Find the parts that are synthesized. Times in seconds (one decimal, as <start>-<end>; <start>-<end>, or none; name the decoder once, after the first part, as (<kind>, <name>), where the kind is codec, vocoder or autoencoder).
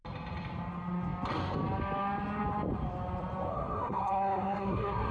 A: 3.5-5.1 (codec, SNAC)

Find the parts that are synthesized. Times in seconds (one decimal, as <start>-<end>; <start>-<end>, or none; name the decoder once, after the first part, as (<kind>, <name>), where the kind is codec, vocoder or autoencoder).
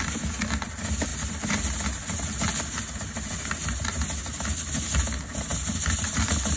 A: none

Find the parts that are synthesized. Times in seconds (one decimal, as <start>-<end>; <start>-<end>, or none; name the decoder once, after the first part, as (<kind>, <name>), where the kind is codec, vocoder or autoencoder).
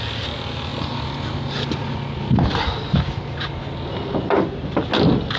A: none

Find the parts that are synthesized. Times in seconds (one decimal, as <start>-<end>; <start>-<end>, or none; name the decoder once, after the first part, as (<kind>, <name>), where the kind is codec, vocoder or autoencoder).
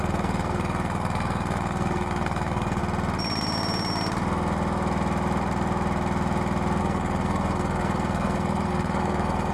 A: 0.0-2.8 (codec, SNAC); 6.8-9.5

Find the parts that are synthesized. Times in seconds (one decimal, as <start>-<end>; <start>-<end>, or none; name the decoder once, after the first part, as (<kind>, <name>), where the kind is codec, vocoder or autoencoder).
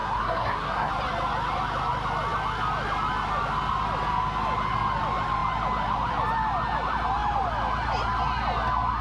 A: 0.0-0.9 (codec, SNAC)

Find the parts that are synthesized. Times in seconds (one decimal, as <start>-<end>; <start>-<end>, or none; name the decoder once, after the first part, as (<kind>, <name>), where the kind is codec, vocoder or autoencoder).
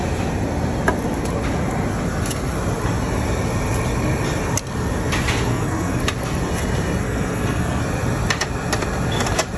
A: 5.5-6.0 (codec, SNAC); 7.0-7.8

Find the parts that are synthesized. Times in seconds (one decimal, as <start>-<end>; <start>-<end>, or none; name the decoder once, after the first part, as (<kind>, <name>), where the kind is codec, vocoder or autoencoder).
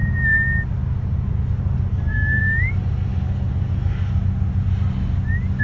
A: 1.9-2.4 (codec, SNAC)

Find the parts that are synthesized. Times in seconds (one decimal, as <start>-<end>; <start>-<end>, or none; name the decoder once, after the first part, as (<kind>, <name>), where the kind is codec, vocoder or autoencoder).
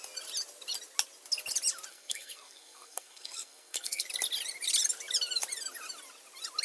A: 1.9-4.1 (codec, SNAC)